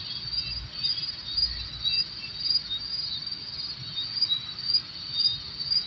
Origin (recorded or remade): recorded